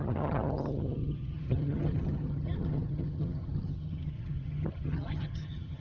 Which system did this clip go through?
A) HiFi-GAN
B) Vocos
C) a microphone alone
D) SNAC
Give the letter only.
A